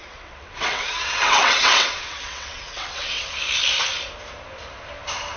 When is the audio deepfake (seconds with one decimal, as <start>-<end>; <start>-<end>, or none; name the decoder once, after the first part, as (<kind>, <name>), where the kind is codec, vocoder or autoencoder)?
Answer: 0.0-3.2 (vocoder, WaveNeXt)